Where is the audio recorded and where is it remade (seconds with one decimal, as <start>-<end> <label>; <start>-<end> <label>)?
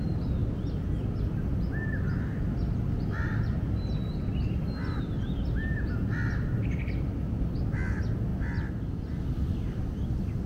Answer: 0.0-10.5 recorded